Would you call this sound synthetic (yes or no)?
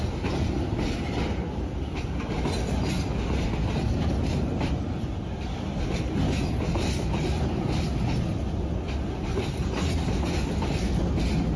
no